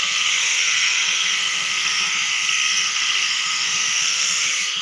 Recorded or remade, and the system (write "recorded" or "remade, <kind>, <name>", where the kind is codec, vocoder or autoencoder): remade, codec, SNAC